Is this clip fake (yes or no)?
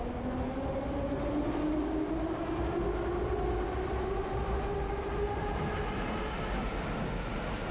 no